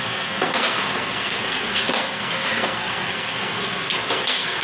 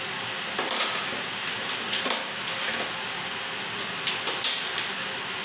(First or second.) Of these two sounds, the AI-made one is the first